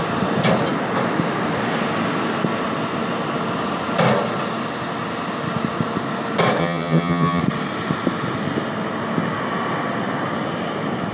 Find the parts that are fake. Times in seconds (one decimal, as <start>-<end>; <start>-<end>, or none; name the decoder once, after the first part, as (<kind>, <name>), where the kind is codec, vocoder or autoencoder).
6.6-7.4 (vocoder, HiFi-GAN)